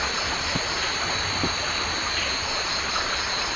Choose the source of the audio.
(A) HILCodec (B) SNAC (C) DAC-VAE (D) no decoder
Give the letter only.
D